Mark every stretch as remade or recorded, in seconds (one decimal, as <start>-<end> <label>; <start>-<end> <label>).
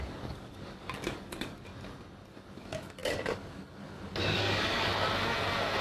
0.0-1.7 remade; 1.7-2.3 recorded; 2.3-4.9 remade; 4.9-5.8 recorded